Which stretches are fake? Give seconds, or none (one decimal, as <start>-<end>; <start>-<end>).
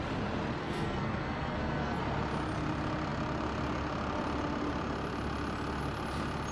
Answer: 0.6-2.0